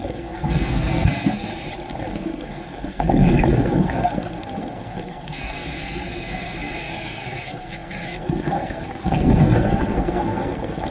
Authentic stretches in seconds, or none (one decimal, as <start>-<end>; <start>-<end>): 1.5-2.1